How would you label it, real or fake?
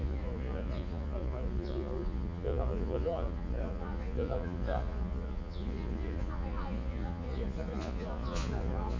fake